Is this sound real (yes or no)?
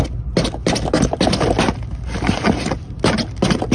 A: yes